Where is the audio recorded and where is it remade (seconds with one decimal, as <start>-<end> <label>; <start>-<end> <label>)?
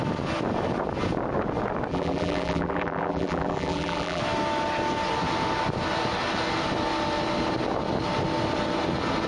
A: 0.0-1.9 recorded; 1.9-4.2 remade; 4.2-9.3 recorded